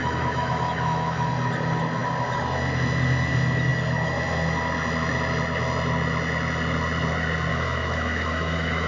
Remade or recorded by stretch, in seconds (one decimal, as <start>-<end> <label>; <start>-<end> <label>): 0.0-1.3 remade; 1.3-7.5 recorded; 7.5-8.9 remade

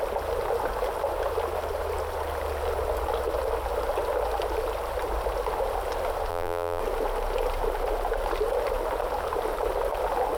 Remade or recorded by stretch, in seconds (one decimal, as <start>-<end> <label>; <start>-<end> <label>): 0.0-6.3 recorded; 6.3-6.8 remade; 6.8-10.4 recorded